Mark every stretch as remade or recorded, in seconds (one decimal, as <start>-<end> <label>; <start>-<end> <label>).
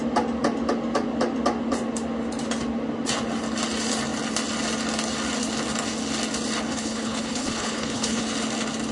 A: 0.0-6.7 recorded; 6.7-8.2 remade; 8.2-8.9 recorded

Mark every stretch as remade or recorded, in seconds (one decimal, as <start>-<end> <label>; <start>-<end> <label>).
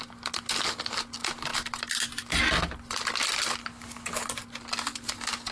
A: 0.0-3.6 recorded; 3.6-4.3 remade; 4.3-5.5 recorded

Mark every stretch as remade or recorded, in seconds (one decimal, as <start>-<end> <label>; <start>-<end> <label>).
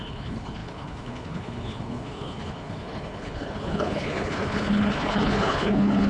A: 0.0-6.1 remade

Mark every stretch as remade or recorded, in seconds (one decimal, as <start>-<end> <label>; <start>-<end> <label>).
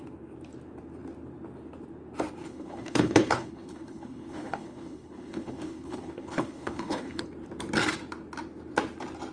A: 0.0-2.4 recorded; 2.4-7.2 remade; 7.2-9.3 recorded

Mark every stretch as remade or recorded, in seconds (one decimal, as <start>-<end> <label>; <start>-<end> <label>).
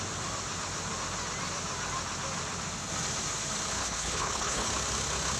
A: 0.0-3.8 recorded; 3.8-4.7 remade; 4.7-5.4 recorded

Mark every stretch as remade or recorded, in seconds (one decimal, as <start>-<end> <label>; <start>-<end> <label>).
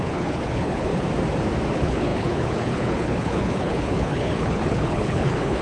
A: 0.0-0.9 remade; 0.9-1.7 recorded; 1.7-5.6 remade